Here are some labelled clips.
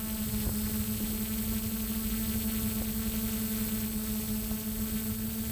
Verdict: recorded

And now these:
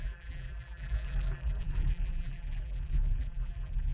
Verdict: remade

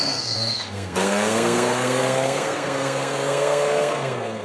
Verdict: remade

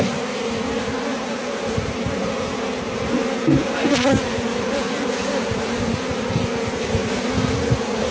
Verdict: recorded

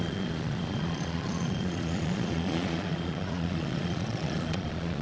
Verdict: remade